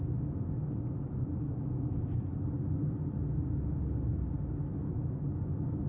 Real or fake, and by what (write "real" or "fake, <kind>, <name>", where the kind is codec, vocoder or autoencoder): real